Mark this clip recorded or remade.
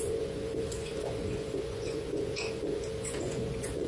remade